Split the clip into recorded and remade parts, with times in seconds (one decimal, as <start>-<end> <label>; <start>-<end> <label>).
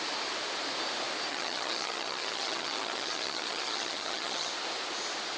0.0-1.3 recorded; 1.3-4.5 remade; 4.5-5.4 recorded